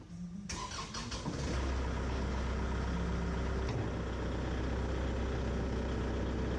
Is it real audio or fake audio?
real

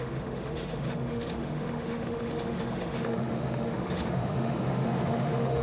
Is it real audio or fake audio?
fake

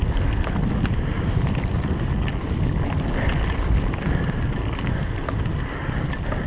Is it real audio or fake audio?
real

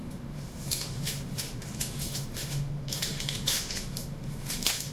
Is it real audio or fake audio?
fake